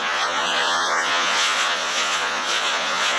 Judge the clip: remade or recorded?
remade